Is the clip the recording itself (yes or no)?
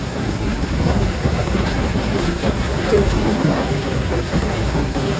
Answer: no